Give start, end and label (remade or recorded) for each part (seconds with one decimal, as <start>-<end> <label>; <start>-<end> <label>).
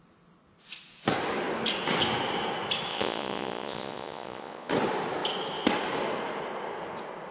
0.0-2.9 recorded; 2.9-4.7 remade; 4.7-7.3 recorded